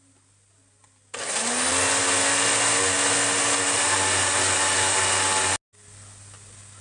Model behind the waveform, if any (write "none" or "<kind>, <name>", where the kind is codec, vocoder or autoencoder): none